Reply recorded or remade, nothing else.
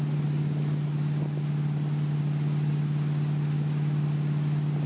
recorded